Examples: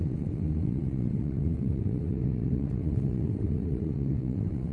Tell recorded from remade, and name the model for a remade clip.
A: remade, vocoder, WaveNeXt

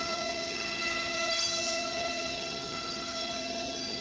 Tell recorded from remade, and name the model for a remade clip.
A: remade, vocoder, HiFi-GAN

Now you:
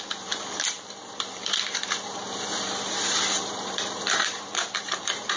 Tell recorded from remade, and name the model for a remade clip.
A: remade, vocoder, BigVGAN v2